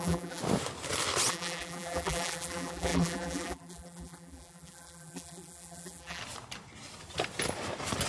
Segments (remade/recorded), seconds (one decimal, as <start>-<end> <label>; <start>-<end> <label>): 0.0-0.4 remade; 0.4-1.3 recorded; 1.3-6.2 remade; 6.2-8.1 recorded